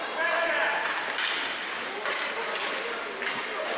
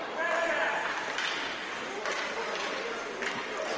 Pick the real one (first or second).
first